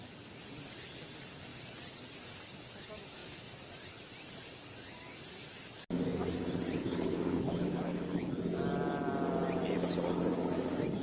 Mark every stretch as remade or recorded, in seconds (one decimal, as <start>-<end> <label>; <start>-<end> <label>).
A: 0.0-6.8 recorded; 6.8-8.3 remade; 8.3-11.0 recorded